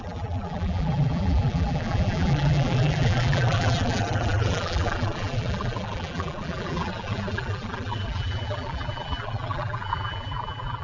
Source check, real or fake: fake